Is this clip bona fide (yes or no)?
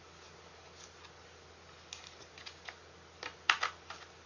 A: yes